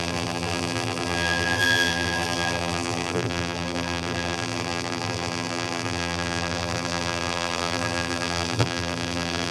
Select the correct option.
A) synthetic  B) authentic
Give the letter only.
A